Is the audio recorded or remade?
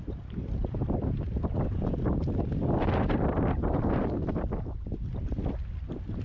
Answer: recorded